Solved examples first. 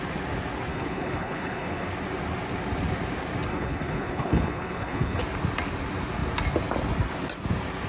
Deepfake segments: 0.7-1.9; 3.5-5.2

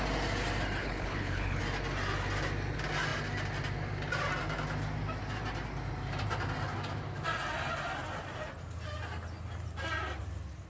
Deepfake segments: 0.8-1.6

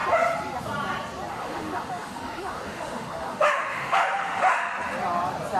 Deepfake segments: 1.3-4.7

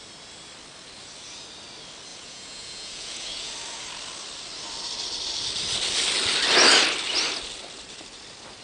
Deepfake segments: 2.1-3.5